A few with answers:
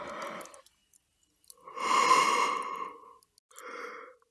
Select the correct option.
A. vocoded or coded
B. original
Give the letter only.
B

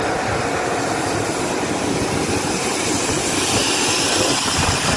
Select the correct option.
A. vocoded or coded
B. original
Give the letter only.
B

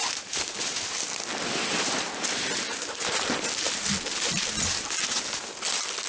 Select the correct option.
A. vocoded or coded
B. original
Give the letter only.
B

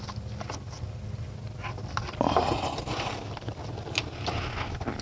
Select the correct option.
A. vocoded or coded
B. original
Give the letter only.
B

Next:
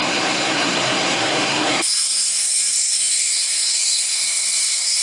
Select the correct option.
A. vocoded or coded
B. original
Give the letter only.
A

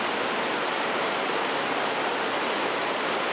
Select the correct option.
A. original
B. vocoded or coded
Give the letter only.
A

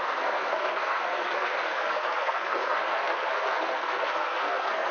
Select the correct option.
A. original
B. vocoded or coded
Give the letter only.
B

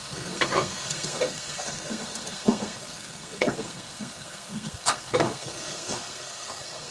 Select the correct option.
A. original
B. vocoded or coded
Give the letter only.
B